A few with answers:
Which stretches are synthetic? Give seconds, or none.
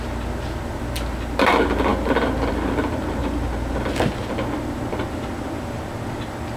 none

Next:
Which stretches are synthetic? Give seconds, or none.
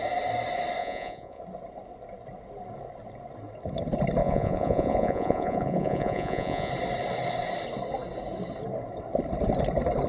0.8-1.4 (vocoder, Vocos); 4.2-6.7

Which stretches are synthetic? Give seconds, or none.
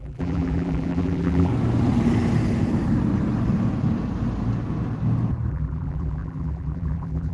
0.0-1.5 (vocoder, BigVGAN v2); 5.5-7.3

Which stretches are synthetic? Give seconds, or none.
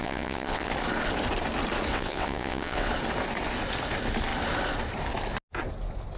0.0-0.7 (vocoder, WaveNeXt); 1.9-2.9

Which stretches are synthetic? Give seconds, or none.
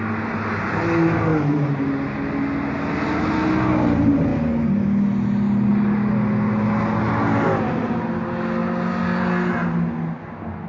none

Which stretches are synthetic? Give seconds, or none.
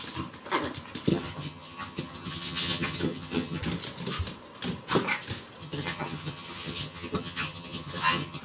1.1-3.6 (vocoder, HiFi-GAN); 5.6-8.4